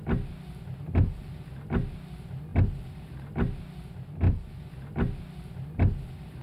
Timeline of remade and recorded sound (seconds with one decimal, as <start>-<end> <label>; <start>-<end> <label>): 0.0-6.4 recorded